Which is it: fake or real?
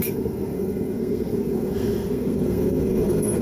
fake